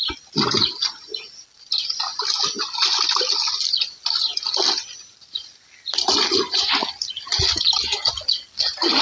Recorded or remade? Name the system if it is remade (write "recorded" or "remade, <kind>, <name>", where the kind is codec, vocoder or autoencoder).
recorded